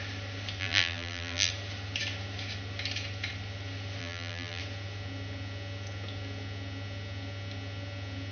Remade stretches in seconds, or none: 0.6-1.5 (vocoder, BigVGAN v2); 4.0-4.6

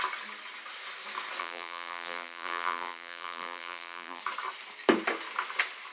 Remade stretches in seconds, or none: 1.4-4.2 (vocoder, BigVGAN v2)

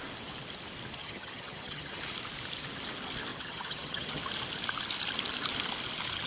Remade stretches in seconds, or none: 1.0-2.0 (vocoder, HiFi-GAN); 3.3-4.2

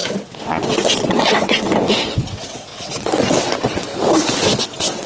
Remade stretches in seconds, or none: 0.0-3.9 (vocoder, WaveNeXt); 4.6-5.1